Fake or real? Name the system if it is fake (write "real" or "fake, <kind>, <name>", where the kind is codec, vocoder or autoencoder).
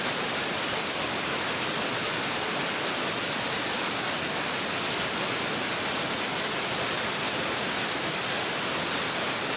real